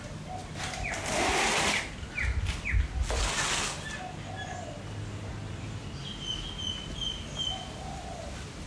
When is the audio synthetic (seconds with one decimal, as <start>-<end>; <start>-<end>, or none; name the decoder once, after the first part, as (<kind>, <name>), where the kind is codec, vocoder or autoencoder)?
none